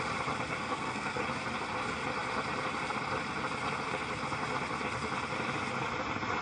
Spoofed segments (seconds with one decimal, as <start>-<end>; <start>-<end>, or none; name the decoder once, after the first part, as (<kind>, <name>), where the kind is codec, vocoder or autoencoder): 0.6-1.2 (codec, SNAC)